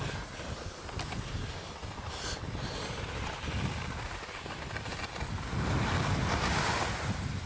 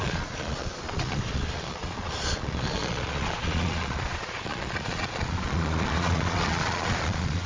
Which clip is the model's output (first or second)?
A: second